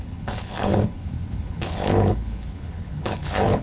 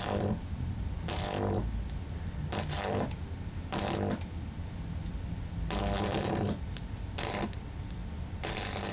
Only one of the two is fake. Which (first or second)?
first